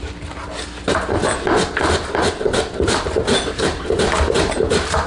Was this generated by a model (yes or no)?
no